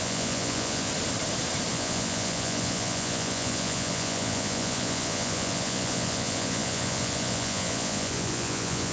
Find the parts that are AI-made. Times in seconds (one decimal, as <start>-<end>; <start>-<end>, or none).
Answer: 0.0-0.9; 1.7-8.9